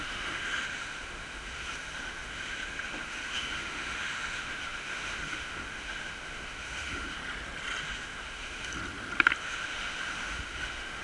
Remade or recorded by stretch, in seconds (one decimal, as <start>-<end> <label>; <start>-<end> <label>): 0.0-7.2 remade; 7.2-7.8 recorded; 7.8-8.7 remade; 8.7-9.4 recorded; 9.4-11.0 remade

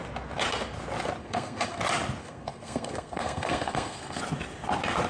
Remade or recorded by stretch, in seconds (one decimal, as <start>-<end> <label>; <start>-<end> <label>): 0.0-1.2 recorded; 1.2-1.8 remade; 1.8-2.2 recorded; 2.2-4.2 remade; 4.2-5.1 recorded

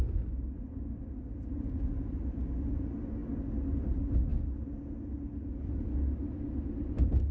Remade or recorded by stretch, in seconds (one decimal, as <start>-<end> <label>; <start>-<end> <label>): 0.0-7.3 recorded

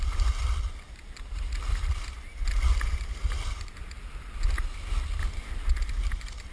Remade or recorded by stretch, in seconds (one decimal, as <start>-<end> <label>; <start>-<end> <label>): 0.0-6.5 recorded

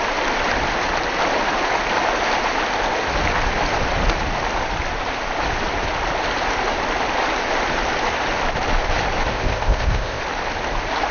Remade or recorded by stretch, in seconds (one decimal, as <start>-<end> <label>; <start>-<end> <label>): 0.0-9.3 recorded; 9.3-10.2 remade; 10.2-11.1 recorded

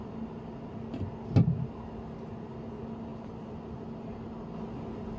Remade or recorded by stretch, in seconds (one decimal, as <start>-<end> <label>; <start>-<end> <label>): 0.0-5.2 recorded

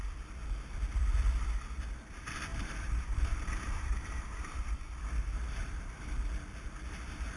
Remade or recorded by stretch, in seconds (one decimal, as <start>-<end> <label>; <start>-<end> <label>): 0.0-2.5 recorded; 2.5-6.1 remade; 6.1-7.4 recorded